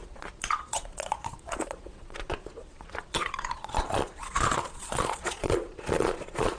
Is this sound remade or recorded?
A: remade